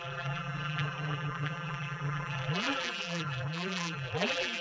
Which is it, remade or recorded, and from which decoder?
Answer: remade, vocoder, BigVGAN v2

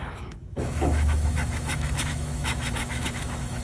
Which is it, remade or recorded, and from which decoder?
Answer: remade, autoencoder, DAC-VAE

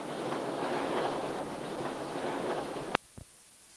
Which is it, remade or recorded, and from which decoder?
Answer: remade, autoencoder, DAC-VAE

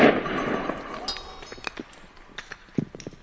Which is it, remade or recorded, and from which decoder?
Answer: recorded